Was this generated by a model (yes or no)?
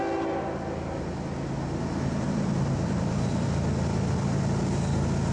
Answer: no